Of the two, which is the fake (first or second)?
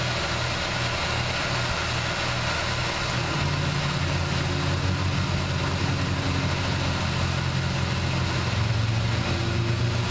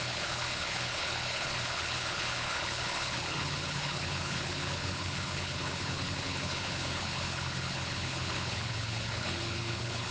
second